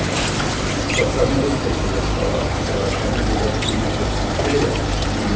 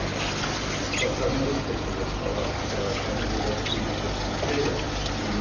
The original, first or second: second